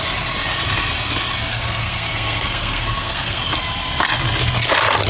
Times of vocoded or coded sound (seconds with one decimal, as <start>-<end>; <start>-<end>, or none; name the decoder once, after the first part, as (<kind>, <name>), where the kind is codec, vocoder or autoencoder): 1.5-3.4 (codec, SNAC)